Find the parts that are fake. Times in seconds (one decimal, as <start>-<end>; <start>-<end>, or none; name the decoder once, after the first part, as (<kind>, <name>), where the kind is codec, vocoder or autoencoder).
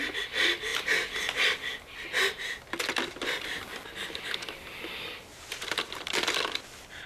5.3-6.1 (vocoder, BigVGAN v2)